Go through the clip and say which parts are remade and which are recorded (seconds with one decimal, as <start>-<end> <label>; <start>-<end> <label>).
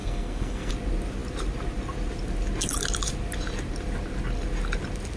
0.0-0.7 remade; 0.7-5.2 recorded